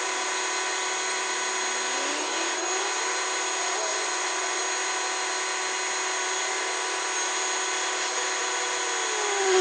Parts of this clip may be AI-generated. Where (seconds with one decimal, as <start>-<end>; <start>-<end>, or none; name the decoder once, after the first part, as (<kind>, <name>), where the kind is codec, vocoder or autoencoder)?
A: 3.9-4.6 (vocoder, Vocos)

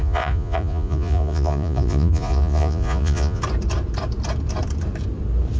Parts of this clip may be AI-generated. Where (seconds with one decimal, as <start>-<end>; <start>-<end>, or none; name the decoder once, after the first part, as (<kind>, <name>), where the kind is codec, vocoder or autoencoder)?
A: 0.0-3.4 (vocoder, Vocos)

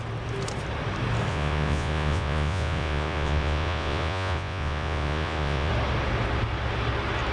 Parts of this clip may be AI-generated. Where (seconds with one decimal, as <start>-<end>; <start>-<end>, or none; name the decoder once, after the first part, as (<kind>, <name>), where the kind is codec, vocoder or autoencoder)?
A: 1.3-5.7 (vocoder, Vocos)

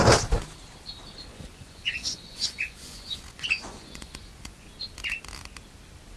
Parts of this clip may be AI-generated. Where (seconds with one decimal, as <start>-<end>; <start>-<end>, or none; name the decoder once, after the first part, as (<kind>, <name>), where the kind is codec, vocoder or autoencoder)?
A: 1.3-4.7 (vocoder, Vocos)

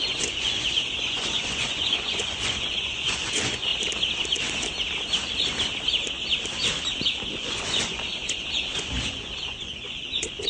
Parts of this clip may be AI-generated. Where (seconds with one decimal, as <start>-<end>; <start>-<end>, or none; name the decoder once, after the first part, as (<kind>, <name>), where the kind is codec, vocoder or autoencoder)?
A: 0.0-3.7 (vocoder, Vocos); 6.9-10.5

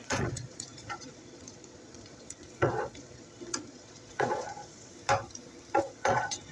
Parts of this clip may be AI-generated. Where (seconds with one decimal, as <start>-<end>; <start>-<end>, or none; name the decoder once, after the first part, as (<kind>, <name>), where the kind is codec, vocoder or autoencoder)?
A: 0.0-4.9 (vocoder, Vocos); 5.8-6.5

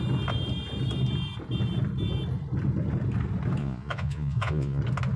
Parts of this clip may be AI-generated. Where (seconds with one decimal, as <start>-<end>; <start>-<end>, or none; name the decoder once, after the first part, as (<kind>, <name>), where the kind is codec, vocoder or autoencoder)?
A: 3.6-4.8 (vocoder, Vocos)

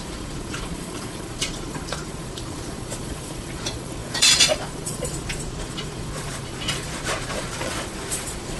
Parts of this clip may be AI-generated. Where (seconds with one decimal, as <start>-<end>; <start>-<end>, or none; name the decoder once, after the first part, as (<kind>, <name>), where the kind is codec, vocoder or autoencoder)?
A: 0.0-8.6 (vocoder, Vocos)